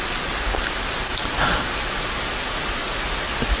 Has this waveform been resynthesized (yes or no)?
no